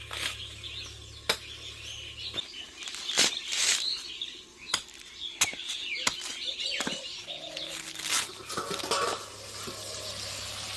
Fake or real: real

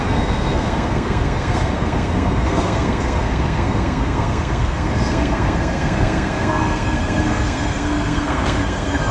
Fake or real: fake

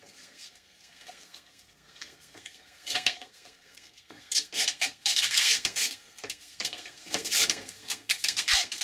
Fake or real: fake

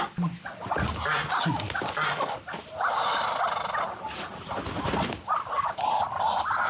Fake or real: real